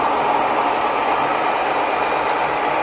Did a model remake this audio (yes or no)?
no